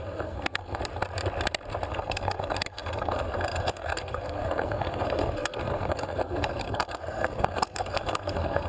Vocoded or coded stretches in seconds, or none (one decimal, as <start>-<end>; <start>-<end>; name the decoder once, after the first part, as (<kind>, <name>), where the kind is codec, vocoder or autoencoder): 0.0-0.8 (codec, SNAC); 1.9-8.7